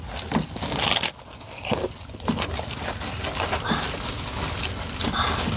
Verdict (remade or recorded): recorded